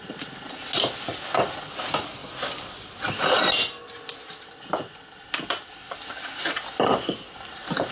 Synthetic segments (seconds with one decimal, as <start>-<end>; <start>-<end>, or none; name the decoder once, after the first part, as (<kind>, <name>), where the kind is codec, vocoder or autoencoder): none